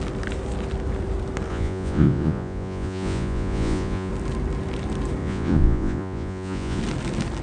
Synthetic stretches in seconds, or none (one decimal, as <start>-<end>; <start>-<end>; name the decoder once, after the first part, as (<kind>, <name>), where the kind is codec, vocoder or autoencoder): 1.5-4.1 (vocoder, Vocos); 5.2-6.8